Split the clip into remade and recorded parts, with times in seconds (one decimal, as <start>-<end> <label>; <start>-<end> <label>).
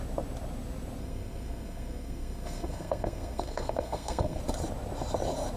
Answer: 0.0-1.0 recorded; 1.0-4.4 remade; 4.4-5.6 recorded